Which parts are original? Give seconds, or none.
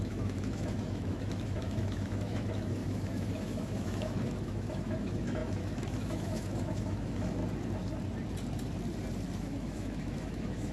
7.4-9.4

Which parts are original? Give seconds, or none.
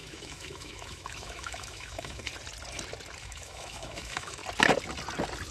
2.3-3.2; 4.4-5.5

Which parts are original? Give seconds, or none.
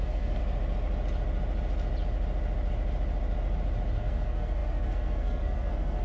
0.4-4.0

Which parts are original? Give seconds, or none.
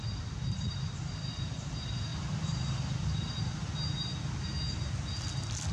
0.0-5.7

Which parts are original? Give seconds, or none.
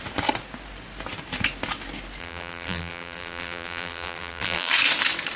0.0-2.2; 4.7-5.4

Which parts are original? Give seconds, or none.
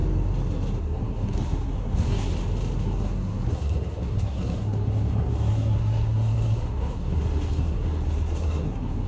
0.0-0.8; 2.3-2.8